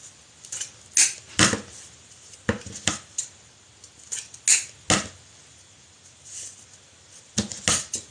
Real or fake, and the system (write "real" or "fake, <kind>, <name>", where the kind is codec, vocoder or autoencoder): real